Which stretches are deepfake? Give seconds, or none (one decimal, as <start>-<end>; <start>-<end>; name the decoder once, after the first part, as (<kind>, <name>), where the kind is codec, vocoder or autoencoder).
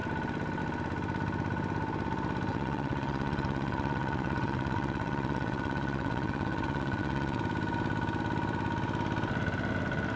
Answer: 2.5-7.4 (vocoder, WaveNeXt)